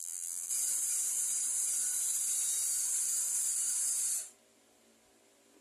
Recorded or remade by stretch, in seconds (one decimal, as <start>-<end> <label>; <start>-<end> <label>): 0.0-0.5 remade; 0.5-5.6 recorded